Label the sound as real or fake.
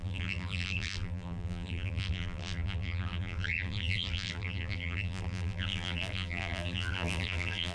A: fake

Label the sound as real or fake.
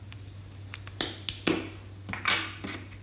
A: real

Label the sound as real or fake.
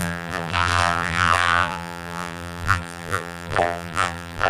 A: fake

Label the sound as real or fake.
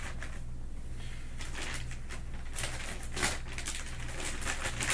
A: real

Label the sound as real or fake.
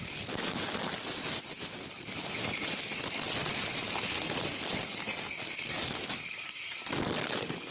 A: real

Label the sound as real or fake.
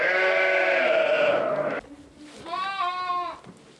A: real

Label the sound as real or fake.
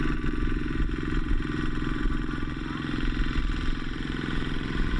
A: fake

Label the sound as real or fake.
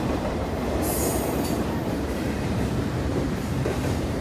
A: fake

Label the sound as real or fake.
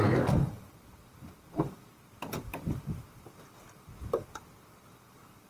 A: fake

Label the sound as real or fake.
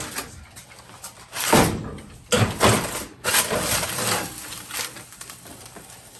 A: fake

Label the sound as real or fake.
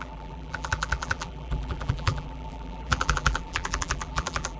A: fake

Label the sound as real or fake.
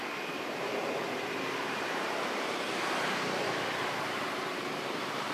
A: fake